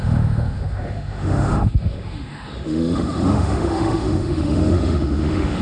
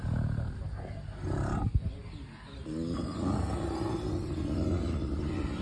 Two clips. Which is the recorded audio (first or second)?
second